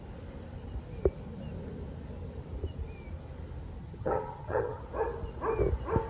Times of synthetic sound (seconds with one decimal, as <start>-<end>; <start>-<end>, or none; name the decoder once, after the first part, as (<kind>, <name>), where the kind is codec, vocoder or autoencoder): 3.8-4.8 (vocoder, HiFi-GAN)